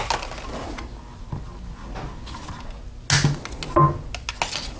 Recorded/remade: recorded